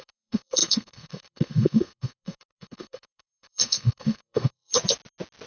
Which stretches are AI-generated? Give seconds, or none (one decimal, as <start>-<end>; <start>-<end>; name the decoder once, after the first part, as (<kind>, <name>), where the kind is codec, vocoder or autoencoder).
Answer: 0.0-4.7 (codec, SNAC)